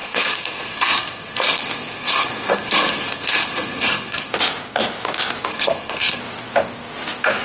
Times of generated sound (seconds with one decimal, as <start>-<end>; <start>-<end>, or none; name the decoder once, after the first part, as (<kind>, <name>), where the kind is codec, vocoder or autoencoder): 0.0-4.3 (codec, SNAC); 5.5-6.2